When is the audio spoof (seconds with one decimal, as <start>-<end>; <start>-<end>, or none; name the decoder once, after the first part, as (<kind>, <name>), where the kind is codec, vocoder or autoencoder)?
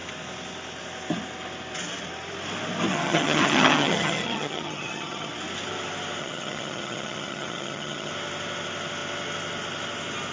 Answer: 2.9-5.3 (vocoder, HiFi-GAN); 6.2-8.1